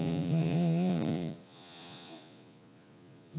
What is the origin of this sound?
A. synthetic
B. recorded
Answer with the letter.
A